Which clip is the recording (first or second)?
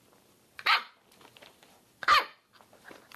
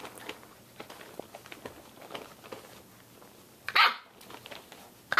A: second